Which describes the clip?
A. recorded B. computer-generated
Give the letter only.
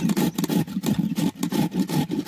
A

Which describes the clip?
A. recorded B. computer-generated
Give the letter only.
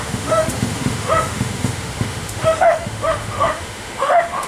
B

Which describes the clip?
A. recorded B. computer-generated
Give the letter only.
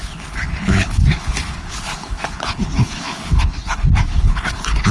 B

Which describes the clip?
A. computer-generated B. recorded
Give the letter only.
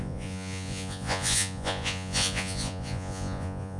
A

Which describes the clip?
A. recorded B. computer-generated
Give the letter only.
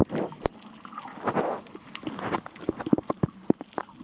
A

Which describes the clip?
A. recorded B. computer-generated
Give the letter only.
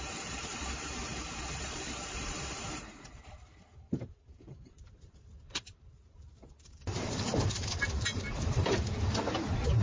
B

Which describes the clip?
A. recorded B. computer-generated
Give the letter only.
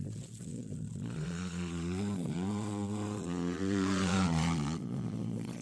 B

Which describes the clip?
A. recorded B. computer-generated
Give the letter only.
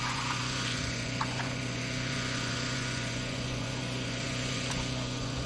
B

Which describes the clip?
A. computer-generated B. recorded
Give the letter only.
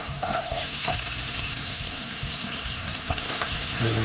A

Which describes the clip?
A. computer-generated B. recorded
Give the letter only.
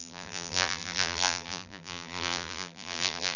A